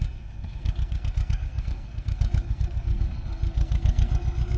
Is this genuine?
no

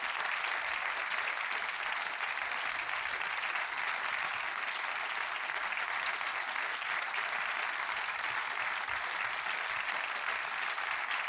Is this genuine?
yes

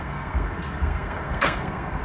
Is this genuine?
no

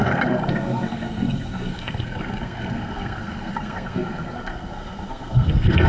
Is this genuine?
no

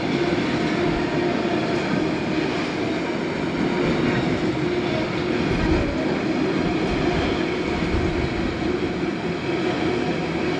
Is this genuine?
yes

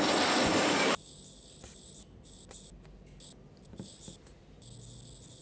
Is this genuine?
yes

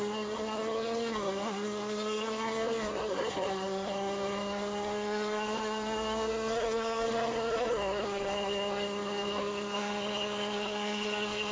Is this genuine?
no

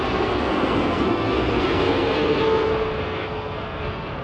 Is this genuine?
no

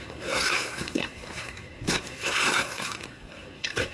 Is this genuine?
no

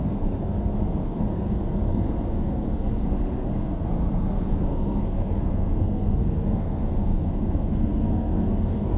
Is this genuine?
no